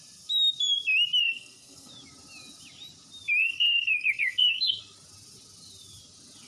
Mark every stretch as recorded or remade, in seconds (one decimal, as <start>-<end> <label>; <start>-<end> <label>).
0.0-1.2 recorded; 1.2-1.9 remade; 1.9-3.4 recorded; 3.4-4.8 remade; 4.8-6.5 recorded